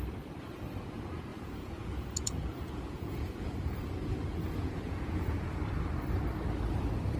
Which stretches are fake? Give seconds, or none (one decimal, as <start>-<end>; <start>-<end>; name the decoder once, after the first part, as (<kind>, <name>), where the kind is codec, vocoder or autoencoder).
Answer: 1.3-5.6 (vocoder, Vocos)